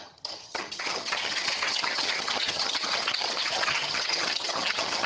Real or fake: fake